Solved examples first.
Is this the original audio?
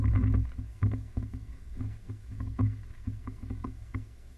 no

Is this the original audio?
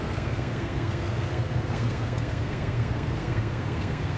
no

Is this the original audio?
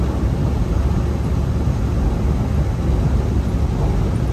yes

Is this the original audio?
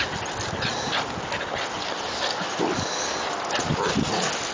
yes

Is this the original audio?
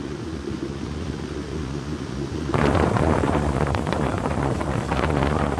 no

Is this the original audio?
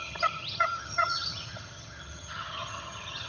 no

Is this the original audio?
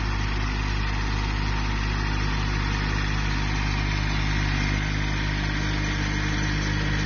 yes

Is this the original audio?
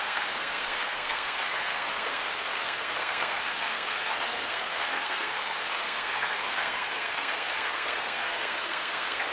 no